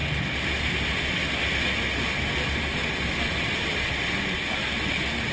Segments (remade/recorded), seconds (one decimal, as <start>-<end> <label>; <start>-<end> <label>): 0.0-5.3 recorded